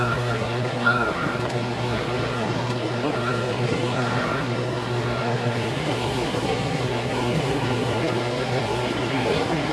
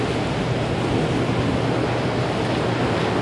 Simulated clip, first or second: first